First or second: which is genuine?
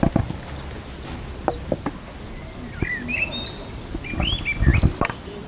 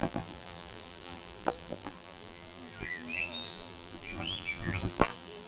first